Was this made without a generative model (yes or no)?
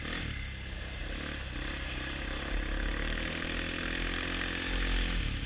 yes